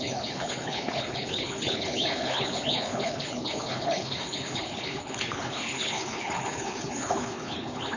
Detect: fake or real fake